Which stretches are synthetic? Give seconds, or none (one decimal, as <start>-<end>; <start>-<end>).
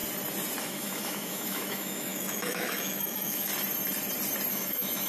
0.6-3.5; 4.5-5.1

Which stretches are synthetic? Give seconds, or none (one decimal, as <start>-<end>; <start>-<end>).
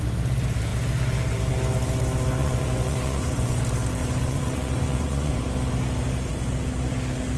2.4-3.6; 4.0-5.3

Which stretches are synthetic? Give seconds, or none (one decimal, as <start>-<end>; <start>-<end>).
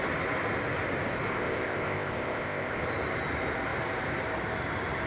1.3-2.8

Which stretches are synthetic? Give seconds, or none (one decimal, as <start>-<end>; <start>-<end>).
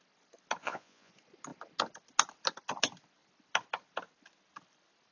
0.6-1.1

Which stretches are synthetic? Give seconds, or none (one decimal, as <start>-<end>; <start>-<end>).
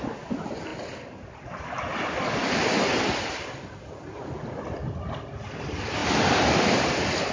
none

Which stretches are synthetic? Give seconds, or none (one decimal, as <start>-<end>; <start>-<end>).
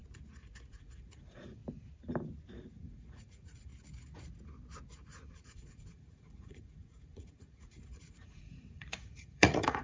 0.7-1.6; 2.7-3.7; 5.4-9.8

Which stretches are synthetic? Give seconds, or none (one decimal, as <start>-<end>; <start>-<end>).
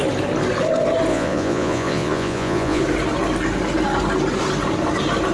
1.1-2.8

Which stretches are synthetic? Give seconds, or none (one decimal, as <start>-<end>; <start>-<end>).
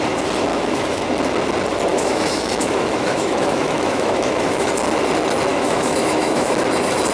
0.5-1.0; 1.9-4.7; 5.5-6.5